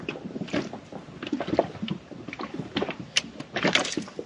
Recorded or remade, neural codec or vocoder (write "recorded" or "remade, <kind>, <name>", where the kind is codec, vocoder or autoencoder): remade, vocoder, BigVGAN v2